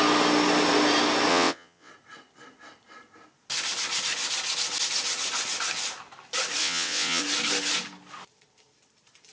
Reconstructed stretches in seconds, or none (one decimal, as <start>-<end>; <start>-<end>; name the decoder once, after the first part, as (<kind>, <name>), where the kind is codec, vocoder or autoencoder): 1.3-1.9 (vocoder, WaveNeXt); 6.6-7.2